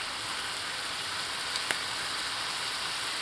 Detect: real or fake fake